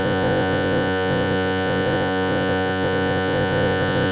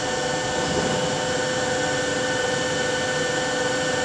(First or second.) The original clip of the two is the second